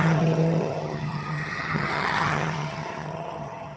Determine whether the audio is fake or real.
fake